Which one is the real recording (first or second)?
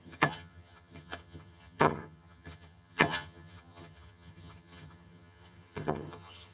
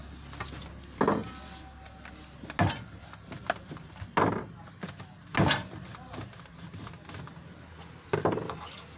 second